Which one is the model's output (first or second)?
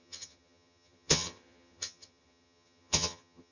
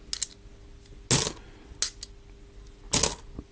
first